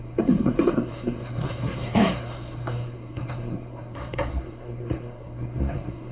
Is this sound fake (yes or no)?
yes